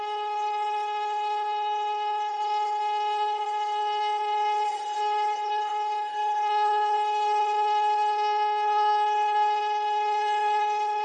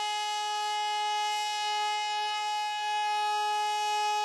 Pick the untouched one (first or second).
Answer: second